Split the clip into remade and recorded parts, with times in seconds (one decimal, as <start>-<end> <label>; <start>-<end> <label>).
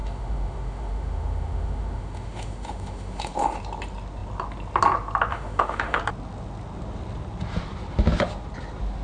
0.0-3.6 remade; 3.6-5.3 recorded; 5.3-6.0 remade; 6.0-9.0 recorded